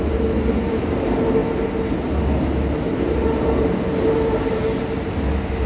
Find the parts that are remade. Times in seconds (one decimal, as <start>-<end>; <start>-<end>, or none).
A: none